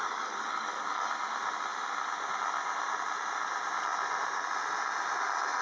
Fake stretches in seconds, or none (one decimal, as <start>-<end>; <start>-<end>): 0.0-1.1